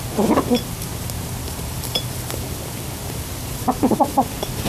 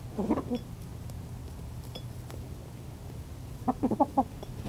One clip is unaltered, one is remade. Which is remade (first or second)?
first